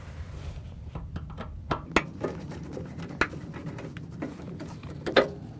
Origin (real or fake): real